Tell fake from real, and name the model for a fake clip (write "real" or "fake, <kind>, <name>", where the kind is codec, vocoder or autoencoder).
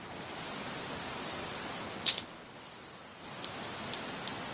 real